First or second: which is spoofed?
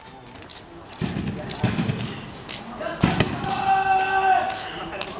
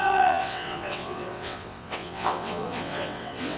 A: second